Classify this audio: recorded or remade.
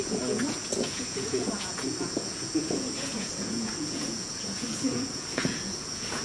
remade